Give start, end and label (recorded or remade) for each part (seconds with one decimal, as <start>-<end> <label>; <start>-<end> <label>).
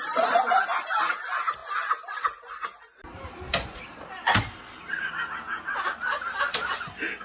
0.0-7.2 recorded